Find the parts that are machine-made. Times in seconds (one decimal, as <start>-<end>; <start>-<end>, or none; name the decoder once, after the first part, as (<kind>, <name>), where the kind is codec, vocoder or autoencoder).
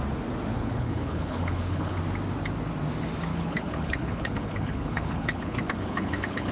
0.5-2.0 (codec, HILCodec); 3.3-6.5